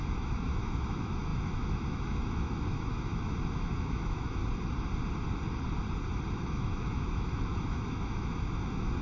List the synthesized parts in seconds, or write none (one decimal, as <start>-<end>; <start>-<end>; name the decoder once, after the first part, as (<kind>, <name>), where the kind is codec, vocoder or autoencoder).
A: 0.0-4.4 (autoencoder, DAC-VAE); 6.4-9.0